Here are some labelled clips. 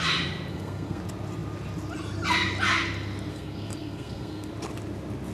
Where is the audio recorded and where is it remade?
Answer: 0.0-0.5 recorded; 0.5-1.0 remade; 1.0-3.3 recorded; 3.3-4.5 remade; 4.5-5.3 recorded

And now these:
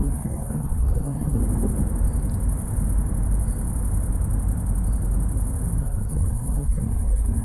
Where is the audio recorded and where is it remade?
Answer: 0.0-1.4 remade; 1.4-5.8 recorded; 5.8-7.4 remade

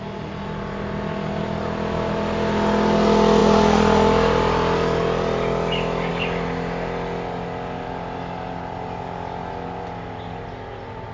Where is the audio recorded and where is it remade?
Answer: 0.0-11.1 recorded

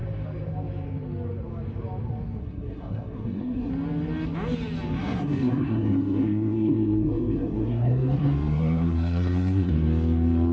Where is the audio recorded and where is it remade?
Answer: 0.0-2.4 recorded; 2.4-3.7 remade; 3.7-5.0 recorded; 5.0-9.7 remade; 9.7-10.5 recorded

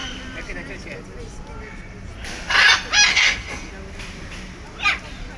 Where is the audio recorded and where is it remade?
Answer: 0.0-3.1 recorded; 3.1-3.7 remade; 3.7-5.4 recorded

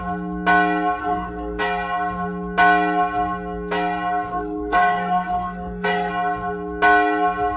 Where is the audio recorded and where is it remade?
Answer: 0.0-1.0 recorded; 1.0-1.6 remade; 1.6-4.3 recorded; 4.3-6.1 remade; 6.1-7.6 recorded

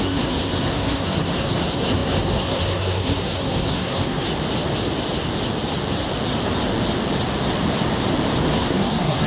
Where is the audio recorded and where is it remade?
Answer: 0.0-4.3 remade; 4.3-8.4 recorded; 8.4-9.3 remade